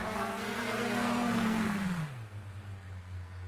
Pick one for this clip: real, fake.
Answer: fake